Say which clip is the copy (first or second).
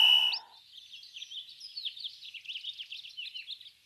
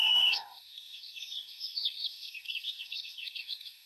second